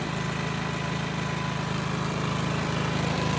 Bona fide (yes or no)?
yes